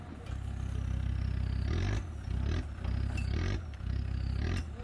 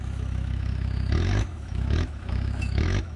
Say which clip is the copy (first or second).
second